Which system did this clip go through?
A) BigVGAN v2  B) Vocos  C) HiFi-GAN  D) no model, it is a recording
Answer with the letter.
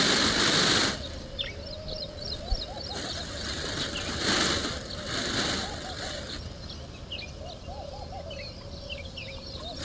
D